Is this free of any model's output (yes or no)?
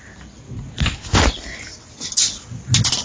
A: yes